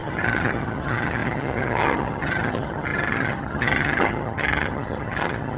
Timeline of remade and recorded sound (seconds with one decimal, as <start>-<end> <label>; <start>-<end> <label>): 0.0-5.6 remade